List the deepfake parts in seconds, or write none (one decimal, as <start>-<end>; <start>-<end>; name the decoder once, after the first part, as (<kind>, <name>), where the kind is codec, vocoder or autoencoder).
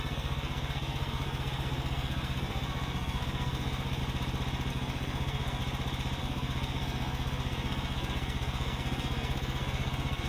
0.0-4.0 (codec, SNAC); 4.7-5.6; 6.2-10.3